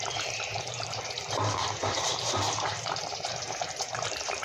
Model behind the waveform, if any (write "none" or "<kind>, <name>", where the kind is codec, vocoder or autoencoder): vocoder, BigVGAN v2